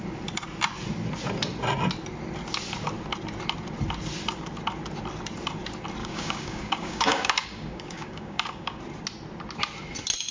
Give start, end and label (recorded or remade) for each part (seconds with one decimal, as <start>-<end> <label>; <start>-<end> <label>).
0.0-6.0 recorded; 6.0-8.8 remade; 8.8-10.3 recorded